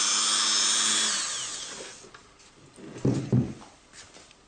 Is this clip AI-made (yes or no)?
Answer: no